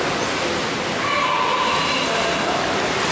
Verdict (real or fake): real